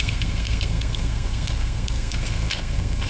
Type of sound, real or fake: fake